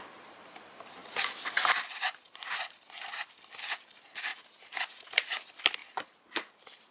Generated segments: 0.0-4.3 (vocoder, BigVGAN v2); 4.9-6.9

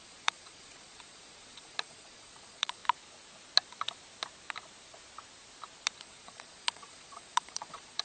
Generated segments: 0.0-2.8 (vocoder, Vocos); 6.0-8.0

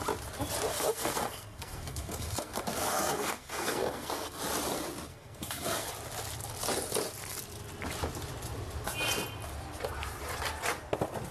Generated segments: 0.7-4.4 (codec, SNAC); 5.1-5.9

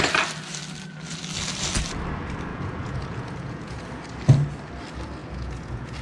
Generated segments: 2.5-3.8 (vocoder, Vocos); 5.2-6.0

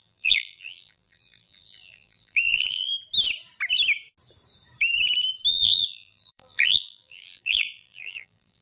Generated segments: 0.0-2.9 (vocoder, BigVGAN v2); 5.5-8.6

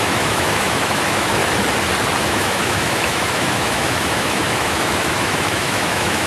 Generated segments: 0.0-1.4 (autoencoder, DAC-VAE); 2.2-6.3

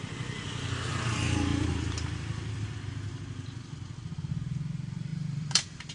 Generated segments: 1.5-4.3 (vocoder, BigVGAN v2); 5.1-5.9